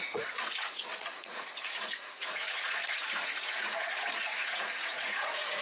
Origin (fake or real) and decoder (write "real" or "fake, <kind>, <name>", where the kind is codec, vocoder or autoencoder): fake, vocoder, Vocos